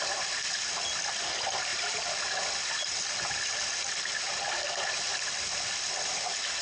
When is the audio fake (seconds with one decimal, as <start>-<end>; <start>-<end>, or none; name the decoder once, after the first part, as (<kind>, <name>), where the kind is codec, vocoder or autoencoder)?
0.0-6.6 (vocoder, BigVGAN v2)